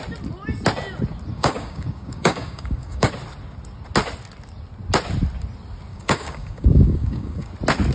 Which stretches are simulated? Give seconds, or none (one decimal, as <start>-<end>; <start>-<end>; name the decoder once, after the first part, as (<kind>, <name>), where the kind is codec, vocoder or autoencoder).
1.3-3.1 (codec, DAC); 5.9-7.5